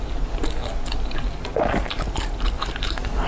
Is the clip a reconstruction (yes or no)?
no